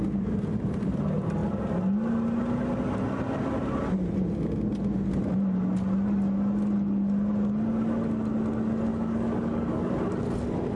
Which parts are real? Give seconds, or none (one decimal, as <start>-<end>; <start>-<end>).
0.0-8.9; 9.9-10.8